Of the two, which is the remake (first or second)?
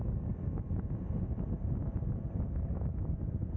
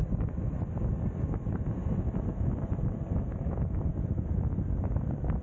second